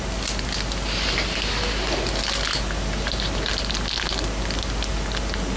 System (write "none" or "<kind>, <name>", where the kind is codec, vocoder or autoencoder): none